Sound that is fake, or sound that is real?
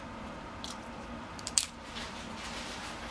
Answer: fake